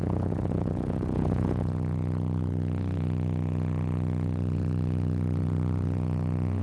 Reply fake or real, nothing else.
fake